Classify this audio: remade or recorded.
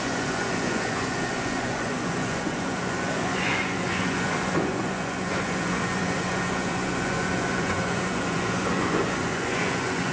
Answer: remade